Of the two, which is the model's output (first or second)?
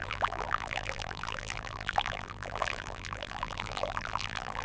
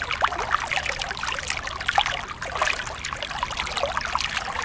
first